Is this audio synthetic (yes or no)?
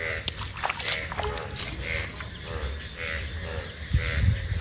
no